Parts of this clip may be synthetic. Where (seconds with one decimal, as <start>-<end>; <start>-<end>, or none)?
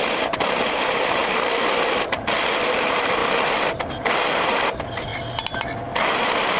0.0-1.2; 2.7-3.2; 4.5-5.1